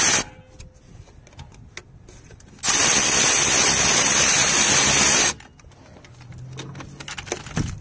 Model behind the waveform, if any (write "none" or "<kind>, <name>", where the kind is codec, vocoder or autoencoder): none